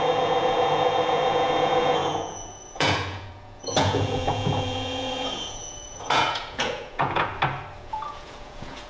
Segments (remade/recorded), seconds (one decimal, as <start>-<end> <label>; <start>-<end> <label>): 0.0-7.3 remade; 7.3-7.8 recorded; 7.8-8.9 remade

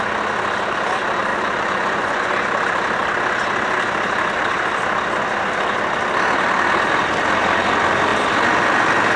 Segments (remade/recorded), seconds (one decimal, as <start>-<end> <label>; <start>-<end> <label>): 0.0-1.3 recorded; 1.3-2.3 remade; 2.3-9.2 recorded

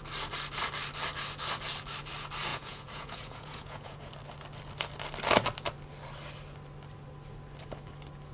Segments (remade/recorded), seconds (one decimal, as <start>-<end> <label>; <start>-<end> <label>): 0.0-2.5 recorded; 2.5-4.1 remade; 4.1-8.3 recorded

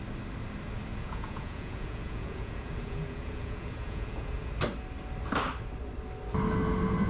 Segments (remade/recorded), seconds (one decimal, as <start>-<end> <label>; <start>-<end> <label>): 0.0-0.9 recorded; 0.9-4.5 remade; 4.5-7.1 recorded

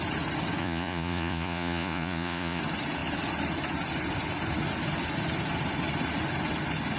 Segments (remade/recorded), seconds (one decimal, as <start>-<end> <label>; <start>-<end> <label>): 0.0-0.6 recorded; 0.6-2.6 remade; 2.6-7.0 recorded

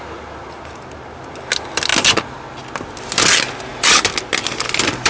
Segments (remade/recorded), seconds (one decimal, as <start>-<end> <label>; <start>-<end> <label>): 0.0-5.1 recorded

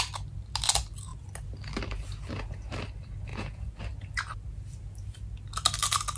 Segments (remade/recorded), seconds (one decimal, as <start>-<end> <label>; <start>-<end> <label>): 0.0-3.3 recorded; 3.3-3.8 remade; 3.8-6.2 recorded

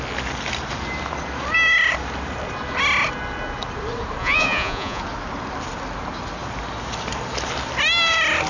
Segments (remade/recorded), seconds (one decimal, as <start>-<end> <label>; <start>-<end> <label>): 0.0-4.2 recorded; 4.2-5.0 remade; 5.0-8.5 recorded